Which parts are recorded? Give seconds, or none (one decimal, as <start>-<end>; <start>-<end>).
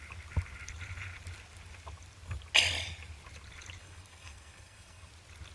0.0-3.8; 5.1-5.5